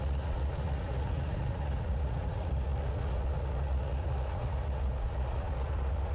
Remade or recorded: remade